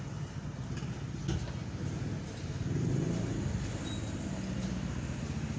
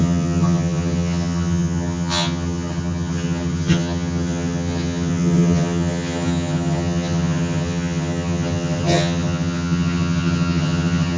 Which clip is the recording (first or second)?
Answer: first